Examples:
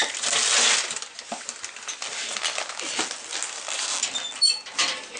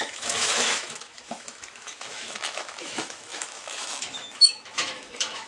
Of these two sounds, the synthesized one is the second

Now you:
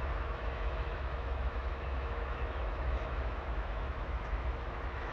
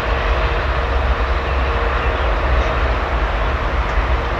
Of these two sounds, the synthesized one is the first